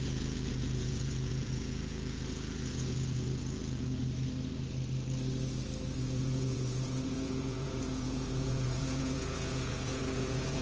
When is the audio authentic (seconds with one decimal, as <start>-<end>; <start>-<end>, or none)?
4.0-6.0